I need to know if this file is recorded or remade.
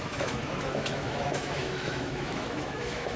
remade